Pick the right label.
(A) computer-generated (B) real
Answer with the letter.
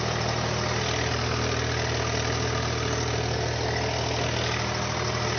B